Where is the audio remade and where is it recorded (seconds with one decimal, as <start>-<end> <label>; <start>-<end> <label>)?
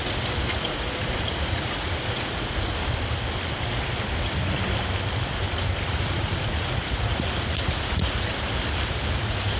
0.0-2.8 remade; 2.8-5.8 recorded; 5.8-8.3 remade; 8.3-9.2 recorded; 9.2-9.6 remade